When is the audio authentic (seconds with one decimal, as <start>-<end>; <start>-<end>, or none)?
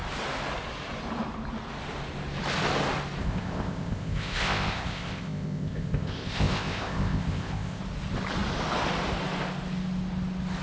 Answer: 0.0-3.2; 7.8-10.6